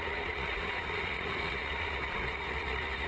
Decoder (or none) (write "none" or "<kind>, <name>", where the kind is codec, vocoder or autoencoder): vocoder, Vocos